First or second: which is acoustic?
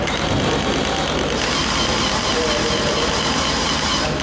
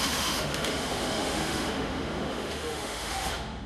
first